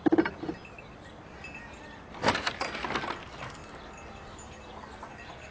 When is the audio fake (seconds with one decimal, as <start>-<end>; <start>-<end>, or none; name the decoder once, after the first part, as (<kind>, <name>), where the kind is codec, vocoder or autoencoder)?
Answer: none